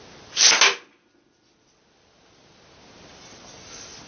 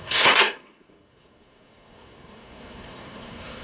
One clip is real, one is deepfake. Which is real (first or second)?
first